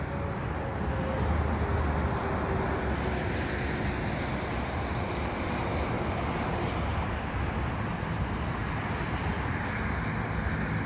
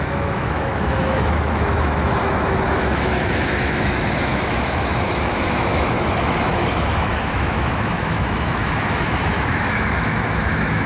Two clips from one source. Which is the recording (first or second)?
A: first